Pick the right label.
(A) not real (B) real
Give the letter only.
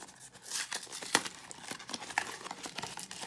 B